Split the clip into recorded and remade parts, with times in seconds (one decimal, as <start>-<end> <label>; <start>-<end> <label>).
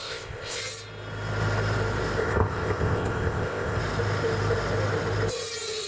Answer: 0.0-0.6 remade; 0.6-2.2 recorded; 2.2-3.8 remade; 3.8-5.9 recorded